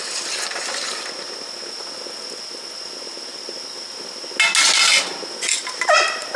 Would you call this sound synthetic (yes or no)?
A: no